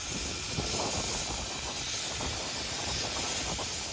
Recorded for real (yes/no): yes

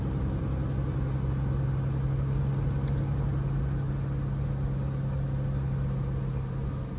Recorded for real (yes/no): yes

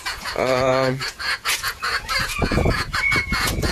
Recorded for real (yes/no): no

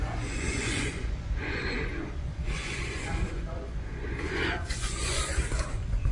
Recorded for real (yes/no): no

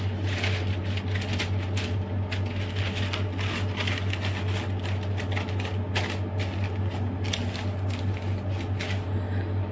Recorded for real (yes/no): yes